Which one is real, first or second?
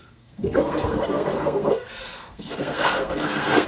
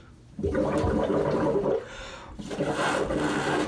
second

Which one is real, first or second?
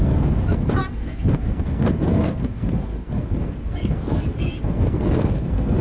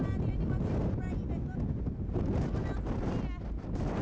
second